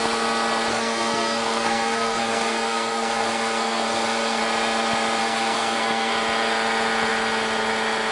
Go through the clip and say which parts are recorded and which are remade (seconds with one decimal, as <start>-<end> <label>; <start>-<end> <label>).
0.0-0.7 recorded; 0.7-4.4 remade; 4.4-5.2 recorded; 5.2-6.1 remade; 6.1-8.1 recorded